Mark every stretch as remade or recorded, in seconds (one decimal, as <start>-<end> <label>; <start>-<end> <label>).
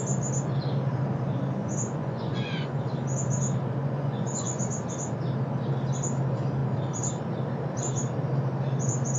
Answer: 0.0-1.6 recorded; 1.6-2.8 remade; 2.8-3.8 recorded; 3.8-4.6 remade; 4.6-9.2 recorded